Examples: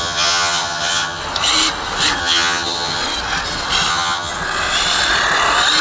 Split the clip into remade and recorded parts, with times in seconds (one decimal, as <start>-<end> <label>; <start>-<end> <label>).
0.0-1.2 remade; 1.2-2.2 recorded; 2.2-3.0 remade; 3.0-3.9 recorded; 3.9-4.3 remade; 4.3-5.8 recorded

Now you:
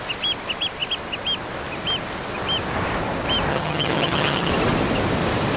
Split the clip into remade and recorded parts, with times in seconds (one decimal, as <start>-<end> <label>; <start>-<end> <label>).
0.0-3.5 recorded; 3.5-4.5 remade; 4.5-5.6 recorded

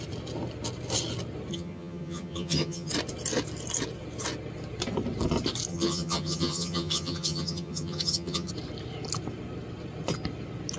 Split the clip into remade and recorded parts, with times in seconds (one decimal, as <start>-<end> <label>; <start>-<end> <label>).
0.0-1.5 recorded; 1.5-2.9 remade; 2.9-5.7 recorded; 5.7-8.5 remade; 8.5-10.8 recorded